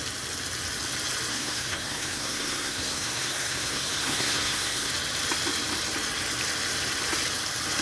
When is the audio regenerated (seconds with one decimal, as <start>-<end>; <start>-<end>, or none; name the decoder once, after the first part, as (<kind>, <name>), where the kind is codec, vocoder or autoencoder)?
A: 1.3-4.9 (codec, SNAC)